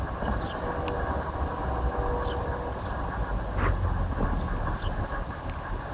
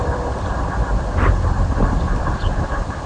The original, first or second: first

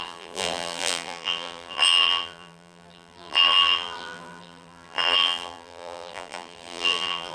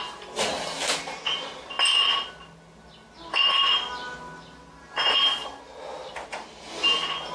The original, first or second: second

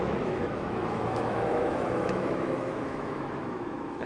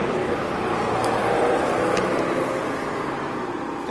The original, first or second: second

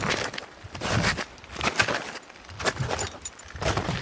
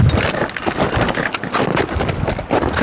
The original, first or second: second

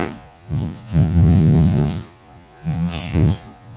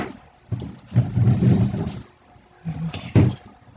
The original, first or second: second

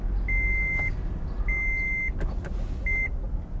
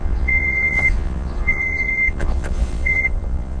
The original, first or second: first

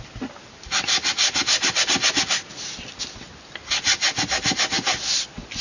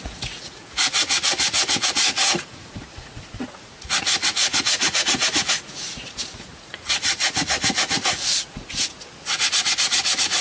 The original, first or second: first